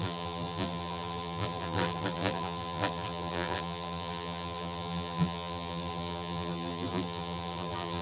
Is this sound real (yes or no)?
no